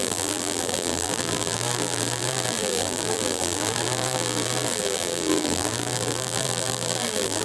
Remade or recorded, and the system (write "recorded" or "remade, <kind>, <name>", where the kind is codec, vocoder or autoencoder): remade, vocoder, BigVGAN v2